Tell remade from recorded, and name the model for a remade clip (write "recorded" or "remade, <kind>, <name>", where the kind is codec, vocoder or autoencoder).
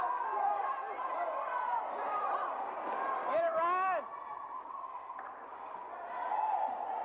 recorded